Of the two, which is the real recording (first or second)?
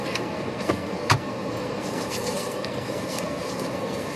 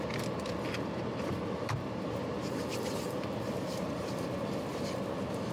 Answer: second